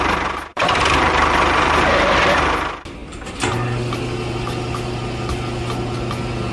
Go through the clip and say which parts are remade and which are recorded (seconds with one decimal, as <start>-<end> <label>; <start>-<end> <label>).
0.0-0.5 recorded; 0.5-2.5 remade; 2.5-6.5 recorded